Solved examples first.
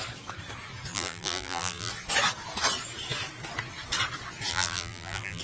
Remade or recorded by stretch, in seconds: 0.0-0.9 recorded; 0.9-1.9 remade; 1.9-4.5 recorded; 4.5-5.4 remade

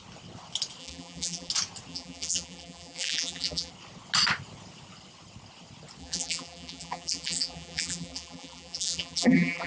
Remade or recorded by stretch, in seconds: 0.0-0.8 recorded; 0.8-1.5 remade; 1.5-1.9 recorded; 1.9-3.7 remade; 3.7-6.0 recorded; 6.0-9.7 remade

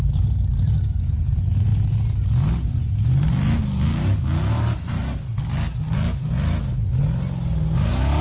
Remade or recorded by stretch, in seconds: 0.0-1.7 remade; 1.7-4.5 recorded; 4.5-5.0 remade; 5.0-8.2 recorded

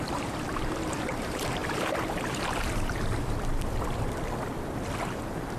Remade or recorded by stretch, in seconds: 0.0-1.6 remade; 1.6-5.0 recorded; 5.0-5.6 remade

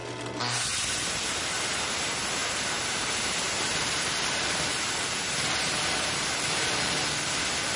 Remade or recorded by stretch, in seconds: 0.0-2.4 recorded; 2.4-6.9 remade; 6.9-7.8 recorded

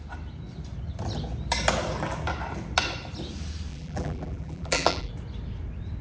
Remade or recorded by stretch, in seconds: 0.0-3.7 recorded; 3.7-5.1 remade; 5.1-6.0 recorded

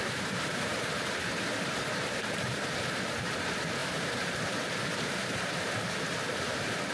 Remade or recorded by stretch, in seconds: 0.0-6.9 remade